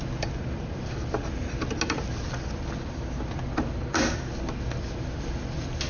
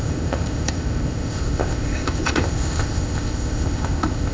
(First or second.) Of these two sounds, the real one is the first